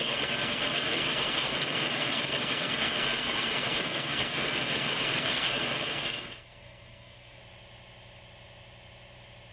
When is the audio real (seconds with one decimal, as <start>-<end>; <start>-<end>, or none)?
7.4-9.5